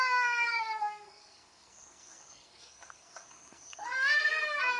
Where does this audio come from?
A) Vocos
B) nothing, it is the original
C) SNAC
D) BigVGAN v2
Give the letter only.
C